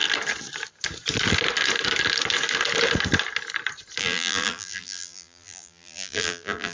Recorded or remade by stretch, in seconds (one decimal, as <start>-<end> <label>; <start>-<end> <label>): 0.0-4.0 recorded; 4.0-6.7 remade